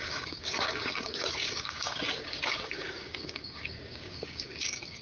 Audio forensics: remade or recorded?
remade